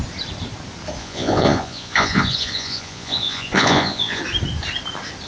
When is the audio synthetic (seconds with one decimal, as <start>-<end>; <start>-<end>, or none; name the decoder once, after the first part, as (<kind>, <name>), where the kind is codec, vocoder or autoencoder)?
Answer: 1.0-4.2 (vocoder, Vocos)